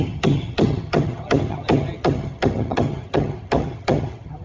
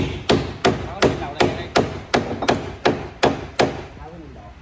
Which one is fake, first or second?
first